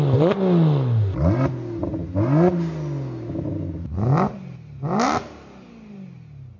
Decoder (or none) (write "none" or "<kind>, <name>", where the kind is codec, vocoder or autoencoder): none